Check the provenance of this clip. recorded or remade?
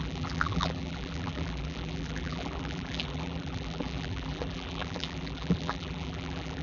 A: remade